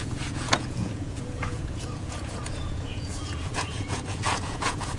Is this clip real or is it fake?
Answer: fake